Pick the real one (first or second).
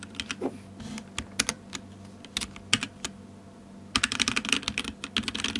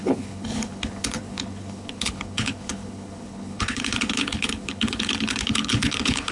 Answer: first